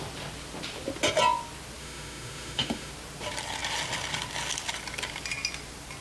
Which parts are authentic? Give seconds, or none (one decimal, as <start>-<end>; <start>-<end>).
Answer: 0.0-1.8; 2.9-6.0